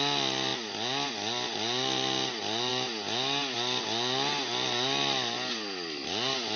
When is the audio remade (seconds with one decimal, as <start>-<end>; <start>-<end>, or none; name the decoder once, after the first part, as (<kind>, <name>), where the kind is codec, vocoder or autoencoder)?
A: none